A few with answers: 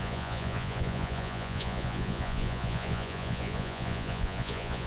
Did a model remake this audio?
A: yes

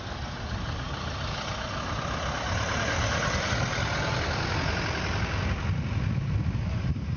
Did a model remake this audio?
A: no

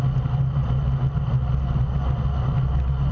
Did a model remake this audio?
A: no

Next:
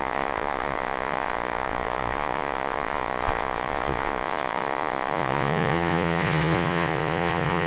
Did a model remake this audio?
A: yes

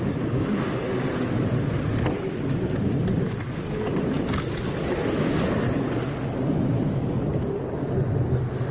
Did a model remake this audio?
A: no